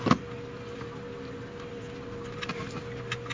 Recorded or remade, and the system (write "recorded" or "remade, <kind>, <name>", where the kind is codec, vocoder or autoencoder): recorded